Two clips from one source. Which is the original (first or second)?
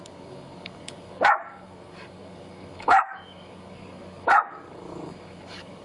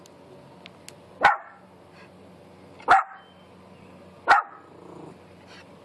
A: second